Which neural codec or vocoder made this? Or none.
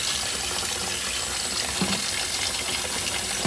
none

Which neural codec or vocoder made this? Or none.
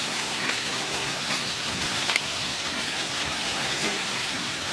codec, SNAC